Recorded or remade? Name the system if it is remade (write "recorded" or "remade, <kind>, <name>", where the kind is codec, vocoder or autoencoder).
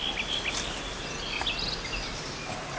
recorded